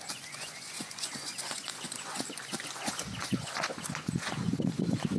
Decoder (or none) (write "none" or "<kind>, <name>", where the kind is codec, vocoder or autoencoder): vocoder, Vocos